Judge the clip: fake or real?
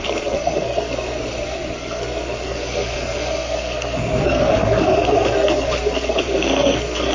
fake